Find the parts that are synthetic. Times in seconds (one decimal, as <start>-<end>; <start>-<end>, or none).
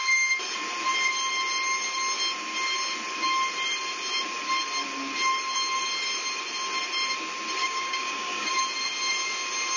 7.6-8.5